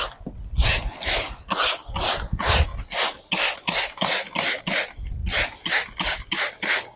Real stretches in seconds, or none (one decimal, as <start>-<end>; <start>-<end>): 0.0-7.0